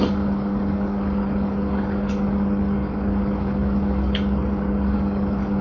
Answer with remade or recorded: remade